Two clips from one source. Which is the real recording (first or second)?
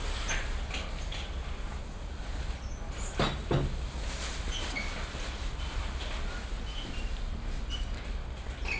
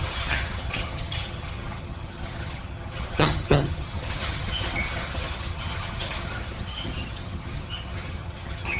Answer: first